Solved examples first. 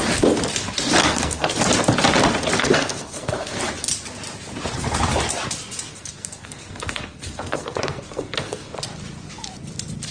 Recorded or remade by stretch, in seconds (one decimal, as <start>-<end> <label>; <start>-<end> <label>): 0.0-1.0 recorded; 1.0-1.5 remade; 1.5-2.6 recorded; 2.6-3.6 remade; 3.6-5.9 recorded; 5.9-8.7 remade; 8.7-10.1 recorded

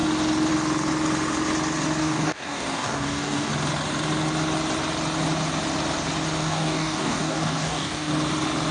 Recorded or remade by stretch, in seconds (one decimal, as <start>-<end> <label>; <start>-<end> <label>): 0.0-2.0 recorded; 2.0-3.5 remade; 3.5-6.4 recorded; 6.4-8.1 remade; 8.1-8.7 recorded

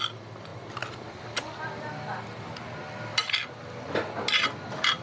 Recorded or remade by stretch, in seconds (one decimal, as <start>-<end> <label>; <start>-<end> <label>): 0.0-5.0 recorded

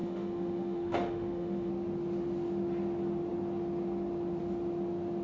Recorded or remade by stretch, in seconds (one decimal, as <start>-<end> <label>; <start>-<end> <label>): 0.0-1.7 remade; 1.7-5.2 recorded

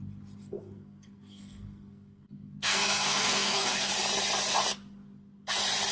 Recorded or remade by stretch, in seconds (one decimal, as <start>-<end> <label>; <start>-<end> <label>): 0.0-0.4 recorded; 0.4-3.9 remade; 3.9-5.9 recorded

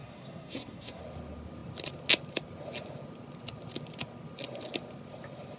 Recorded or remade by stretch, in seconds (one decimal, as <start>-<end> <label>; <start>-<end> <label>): 0.0-1.0 remade; 1.0-5.6 recorded

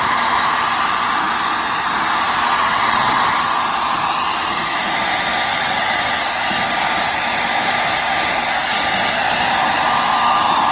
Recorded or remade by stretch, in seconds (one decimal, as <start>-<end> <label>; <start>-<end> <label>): 0.0-2.6 recorded; 2.6-3.2 remade; 3.2-5.5 recorded; 5.5-6.1 remade; 6.1-10.7 recorded